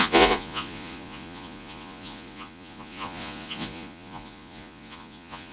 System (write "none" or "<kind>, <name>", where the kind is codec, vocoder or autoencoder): vocoder, Vocos